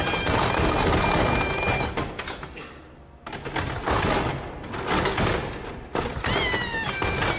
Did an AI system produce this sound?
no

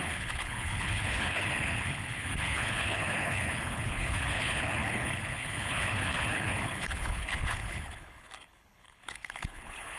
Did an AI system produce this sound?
yes